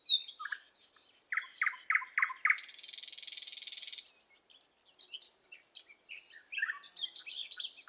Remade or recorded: recorded